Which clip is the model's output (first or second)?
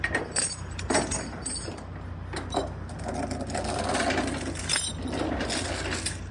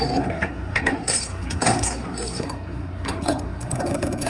second